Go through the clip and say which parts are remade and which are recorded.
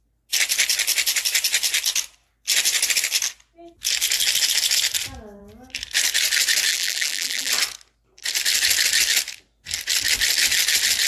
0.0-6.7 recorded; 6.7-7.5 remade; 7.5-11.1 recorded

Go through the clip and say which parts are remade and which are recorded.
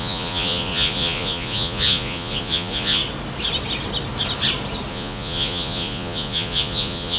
0.0-3.0 remade; 3.0-4.9 recorded; 4.9-7.2 remade